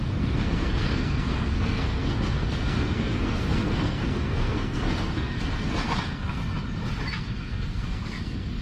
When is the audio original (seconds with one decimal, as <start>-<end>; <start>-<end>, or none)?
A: 6.4-7.2